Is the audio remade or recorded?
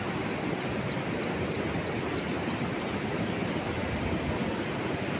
recorded